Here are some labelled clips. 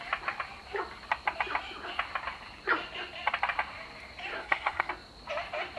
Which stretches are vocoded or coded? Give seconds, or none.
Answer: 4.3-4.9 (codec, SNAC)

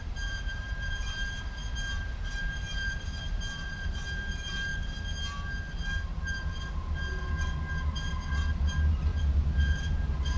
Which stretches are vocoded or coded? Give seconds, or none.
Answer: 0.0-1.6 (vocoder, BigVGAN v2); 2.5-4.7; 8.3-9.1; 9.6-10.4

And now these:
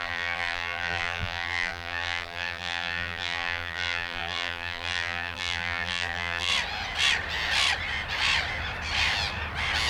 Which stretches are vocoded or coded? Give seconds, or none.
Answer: 0.0-6.5 (vocoder, BigVGAN v2)

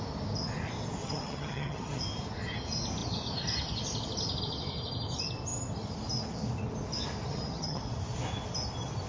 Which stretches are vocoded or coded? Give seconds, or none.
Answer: 1.0-2.0 (vocoder, HiFi-GAN); 7.3-7.8

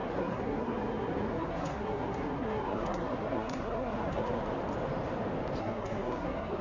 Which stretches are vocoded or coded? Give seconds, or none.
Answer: 0.0-4.4 (codec, SNAC); 5.6-6.6